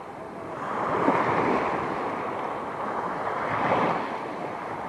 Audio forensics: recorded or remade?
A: remade